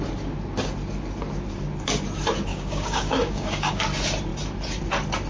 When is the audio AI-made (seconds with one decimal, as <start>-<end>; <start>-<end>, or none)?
2.5-3.8